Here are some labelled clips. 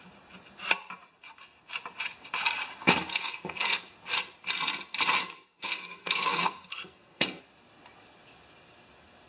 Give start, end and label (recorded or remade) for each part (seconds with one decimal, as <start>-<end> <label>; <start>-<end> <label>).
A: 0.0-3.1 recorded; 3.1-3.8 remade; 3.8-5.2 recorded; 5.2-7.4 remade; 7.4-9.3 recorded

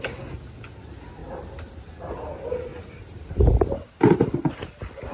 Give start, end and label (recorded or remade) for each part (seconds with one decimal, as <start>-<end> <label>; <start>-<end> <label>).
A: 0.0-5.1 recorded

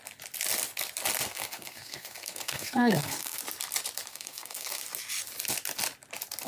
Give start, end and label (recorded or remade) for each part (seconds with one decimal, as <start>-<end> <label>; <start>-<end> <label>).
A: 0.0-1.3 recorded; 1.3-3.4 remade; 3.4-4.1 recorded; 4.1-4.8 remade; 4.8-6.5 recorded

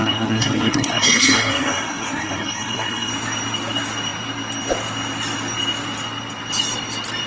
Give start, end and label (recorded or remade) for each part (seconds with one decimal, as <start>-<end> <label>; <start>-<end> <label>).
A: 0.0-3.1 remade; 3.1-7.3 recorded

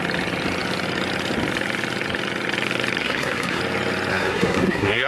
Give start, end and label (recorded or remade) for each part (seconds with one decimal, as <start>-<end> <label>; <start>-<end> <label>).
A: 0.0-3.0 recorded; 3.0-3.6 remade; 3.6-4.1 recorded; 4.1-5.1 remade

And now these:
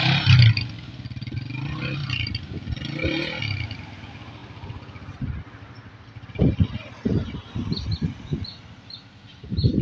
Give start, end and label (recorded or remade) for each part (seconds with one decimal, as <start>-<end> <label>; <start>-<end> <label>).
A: 0.0-9.8 recorded